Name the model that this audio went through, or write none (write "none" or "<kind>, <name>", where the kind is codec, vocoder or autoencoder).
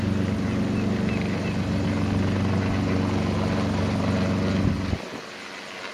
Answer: none